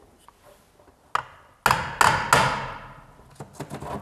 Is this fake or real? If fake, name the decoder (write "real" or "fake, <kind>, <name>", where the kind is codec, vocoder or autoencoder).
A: real